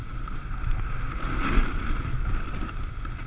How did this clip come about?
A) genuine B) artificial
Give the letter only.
A